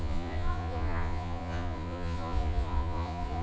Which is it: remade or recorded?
remade